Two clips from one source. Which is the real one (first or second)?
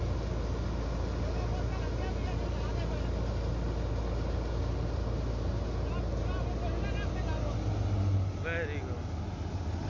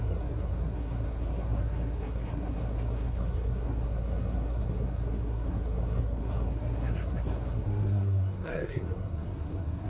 first